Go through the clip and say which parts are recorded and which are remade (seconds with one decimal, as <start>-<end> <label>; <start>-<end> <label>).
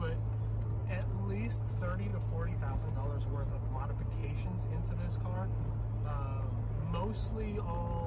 0.0-8.1 recorded